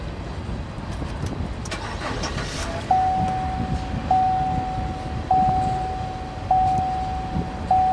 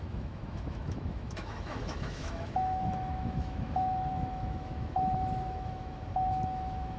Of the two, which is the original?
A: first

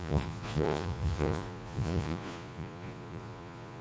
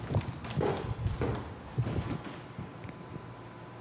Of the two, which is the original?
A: second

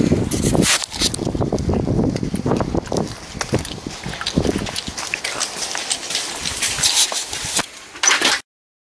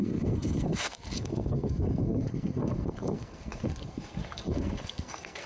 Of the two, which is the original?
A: first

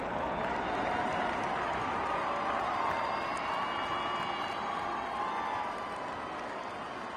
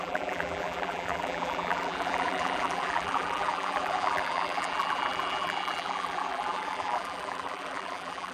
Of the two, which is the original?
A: first